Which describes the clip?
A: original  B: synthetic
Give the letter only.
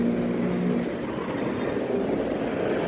A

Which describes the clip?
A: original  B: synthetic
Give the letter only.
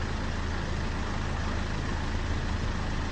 A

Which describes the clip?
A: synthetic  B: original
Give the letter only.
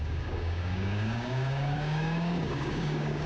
A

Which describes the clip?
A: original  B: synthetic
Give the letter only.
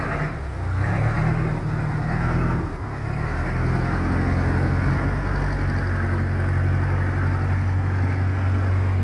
A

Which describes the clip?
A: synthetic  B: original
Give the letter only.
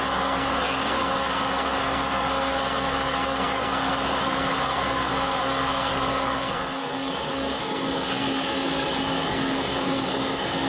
A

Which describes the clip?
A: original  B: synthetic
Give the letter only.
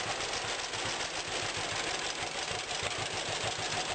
A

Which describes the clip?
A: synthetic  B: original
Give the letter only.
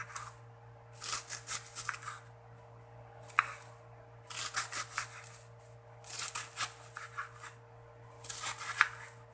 B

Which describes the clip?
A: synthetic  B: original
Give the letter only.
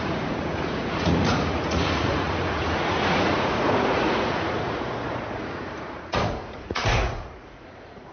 A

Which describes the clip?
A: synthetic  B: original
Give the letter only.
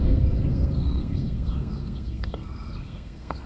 A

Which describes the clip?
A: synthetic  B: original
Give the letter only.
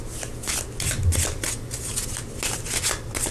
B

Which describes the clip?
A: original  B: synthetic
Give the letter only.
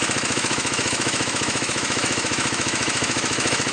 B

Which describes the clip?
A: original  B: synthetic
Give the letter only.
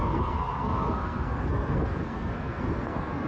B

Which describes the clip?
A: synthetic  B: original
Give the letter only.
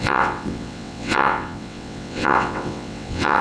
A